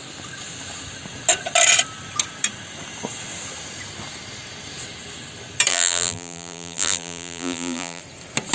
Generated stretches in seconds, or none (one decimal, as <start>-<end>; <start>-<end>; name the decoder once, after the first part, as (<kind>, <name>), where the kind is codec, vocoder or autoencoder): 5.7-8.0 (vocoder, BigVGAN v2)